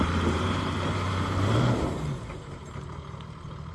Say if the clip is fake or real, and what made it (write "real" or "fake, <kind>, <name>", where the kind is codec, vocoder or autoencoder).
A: fake, vocoder, BigVGAN v2